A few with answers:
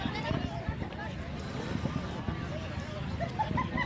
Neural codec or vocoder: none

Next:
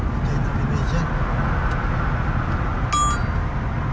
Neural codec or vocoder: none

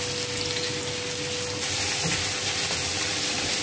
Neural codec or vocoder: none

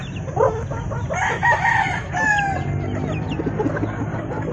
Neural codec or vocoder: none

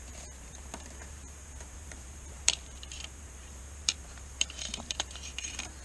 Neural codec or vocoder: vocoder, BigVGAN v2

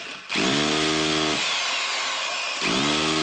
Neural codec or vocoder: none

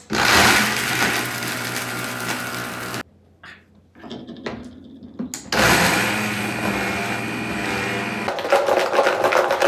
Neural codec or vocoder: none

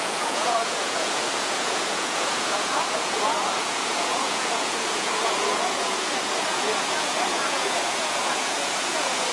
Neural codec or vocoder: vocoder, Vocos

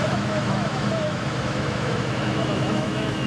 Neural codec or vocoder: autoencoder, DAC-VAE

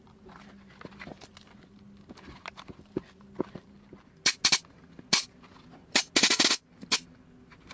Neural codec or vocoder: none